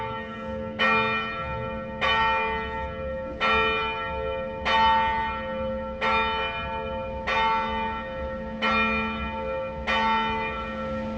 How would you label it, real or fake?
real